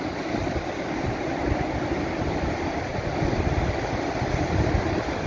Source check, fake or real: real